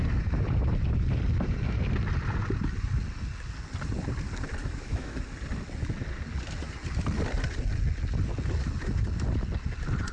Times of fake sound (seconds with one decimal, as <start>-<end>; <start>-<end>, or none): 4.6-5.2